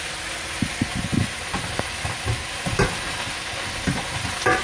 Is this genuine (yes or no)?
yes